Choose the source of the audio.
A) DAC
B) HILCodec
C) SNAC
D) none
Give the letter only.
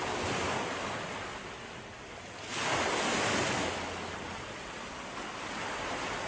D